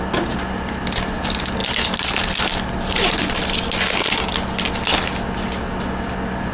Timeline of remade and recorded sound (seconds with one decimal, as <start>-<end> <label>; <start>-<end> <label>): 0.0-6.5 recorded